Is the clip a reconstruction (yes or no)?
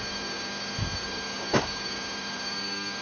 yes